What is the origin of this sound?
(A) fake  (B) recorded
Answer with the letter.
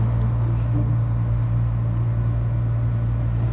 B